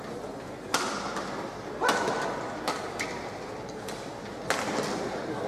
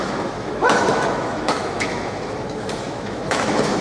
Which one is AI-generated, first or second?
second